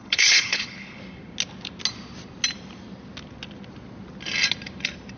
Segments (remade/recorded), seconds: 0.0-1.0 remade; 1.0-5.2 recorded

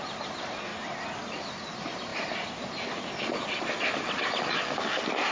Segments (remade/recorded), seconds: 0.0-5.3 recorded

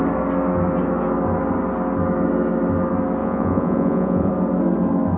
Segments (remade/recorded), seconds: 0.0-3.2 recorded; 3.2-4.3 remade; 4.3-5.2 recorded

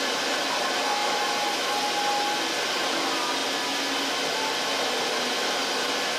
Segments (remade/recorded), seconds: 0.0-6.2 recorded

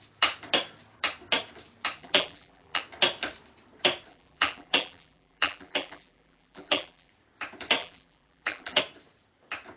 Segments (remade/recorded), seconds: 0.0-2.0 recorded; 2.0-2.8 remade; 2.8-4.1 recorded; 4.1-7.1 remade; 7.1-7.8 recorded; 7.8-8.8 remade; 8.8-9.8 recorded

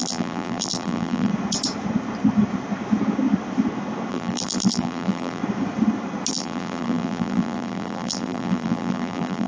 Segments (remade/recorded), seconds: 0.0-1.3 remade; 1.3-4.1 recorded; 4.1-5.4 remade; 5.4-6.3 recorded; 6.3-9.5 remade

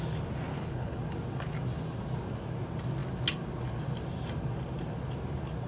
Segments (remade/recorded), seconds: 0.0-0.5 recorded; 0.5-1.0 remade; 1.0-5.7 recorded